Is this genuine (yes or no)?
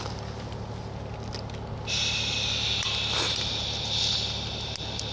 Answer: yes